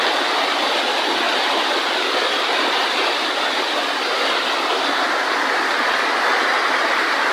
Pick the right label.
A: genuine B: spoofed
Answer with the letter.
A